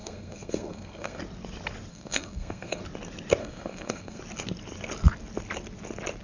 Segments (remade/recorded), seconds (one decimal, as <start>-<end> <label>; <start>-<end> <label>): 0.0-1.2 remade; 1.2-1.9 recorded; 1.9-2.8 remade; 2.8-3.4 recorded; 3.4-4.2 remade; 4.2-6.2 recorded